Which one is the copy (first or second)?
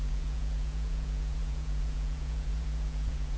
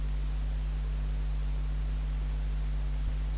first